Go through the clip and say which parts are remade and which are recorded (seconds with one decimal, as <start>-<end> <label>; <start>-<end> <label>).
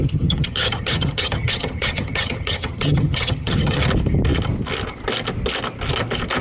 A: 0.0-3.8 remade; 3.8-6.4 recorded